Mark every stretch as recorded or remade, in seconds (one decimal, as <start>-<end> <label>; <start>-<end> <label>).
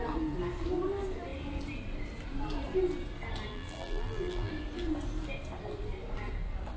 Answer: 0.0-3.5 recorded; 3.5-4.5 remade; 4.5-6.8 recorded